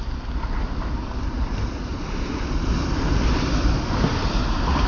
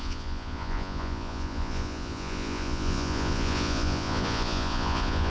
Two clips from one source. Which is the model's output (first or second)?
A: second